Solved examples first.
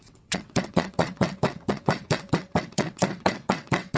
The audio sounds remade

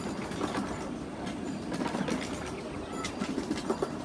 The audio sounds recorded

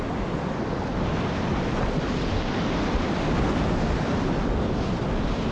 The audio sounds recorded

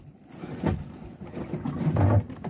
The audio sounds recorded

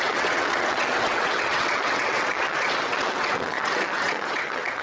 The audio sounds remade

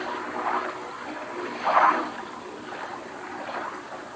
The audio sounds recorded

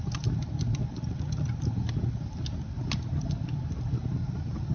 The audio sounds recorded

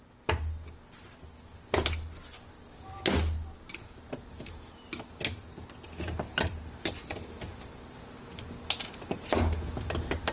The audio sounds recorded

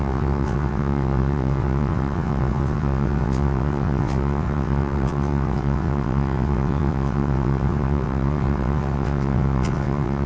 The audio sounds remade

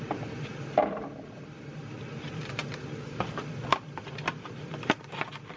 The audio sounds recorded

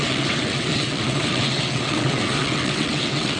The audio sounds remade